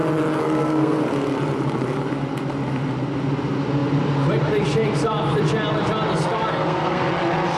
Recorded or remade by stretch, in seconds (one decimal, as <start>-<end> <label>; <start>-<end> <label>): 0.0-0.4 recorded; 0.4-1.0 remade; 1.0-6.5 recorded; 6.5-7.1 remade; 7.1-7.6 recorded